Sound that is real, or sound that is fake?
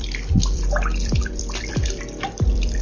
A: fake